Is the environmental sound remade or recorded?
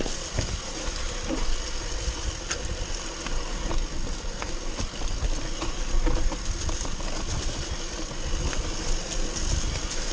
recorded